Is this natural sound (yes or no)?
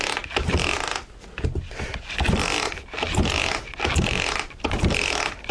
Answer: yes